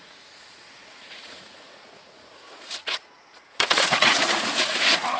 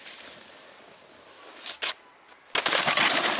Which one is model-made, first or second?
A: first